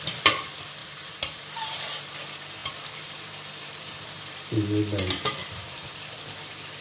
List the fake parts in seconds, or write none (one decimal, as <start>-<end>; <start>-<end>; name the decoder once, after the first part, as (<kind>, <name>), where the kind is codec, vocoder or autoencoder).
0.8-2.1 (vocoder, BigVGAN v2); 2.6-4.5; 5.4-6.2